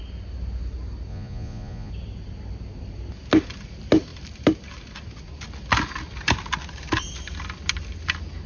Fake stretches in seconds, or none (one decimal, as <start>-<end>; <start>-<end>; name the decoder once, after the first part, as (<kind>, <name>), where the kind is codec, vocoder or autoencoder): 1.1-1.9 (vocoder, Vocos)